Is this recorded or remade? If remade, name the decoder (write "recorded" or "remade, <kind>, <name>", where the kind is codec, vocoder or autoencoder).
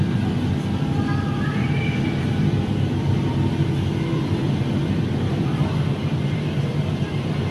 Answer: remade, vocoder, BigVGAN v2